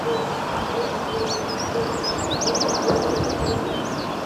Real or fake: real